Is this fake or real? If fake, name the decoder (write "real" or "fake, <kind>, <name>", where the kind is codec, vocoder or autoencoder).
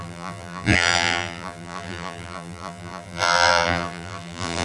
fake, vocoder, BigVGAN v2